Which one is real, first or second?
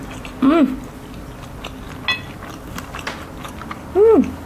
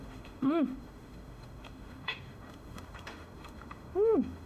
first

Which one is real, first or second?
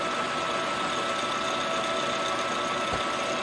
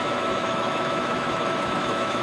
first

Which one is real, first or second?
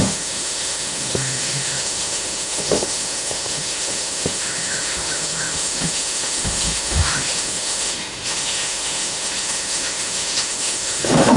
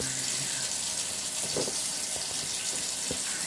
second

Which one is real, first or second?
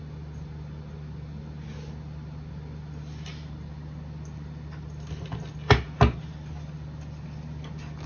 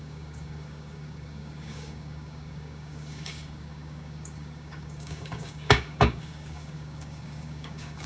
first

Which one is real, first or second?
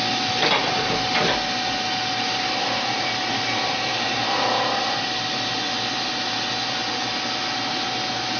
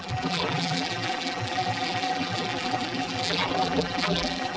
first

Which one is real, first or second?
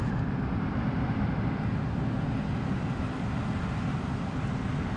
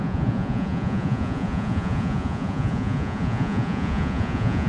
first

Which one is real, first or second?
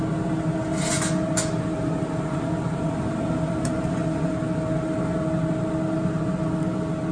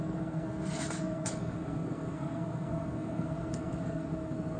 first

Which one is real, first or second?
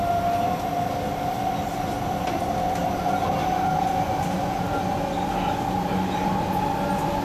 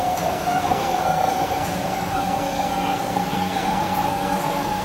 first